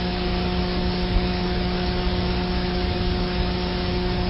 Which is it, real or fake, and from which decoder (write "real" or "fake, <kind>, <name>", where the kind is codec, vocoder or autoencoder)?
fake, codec, DAC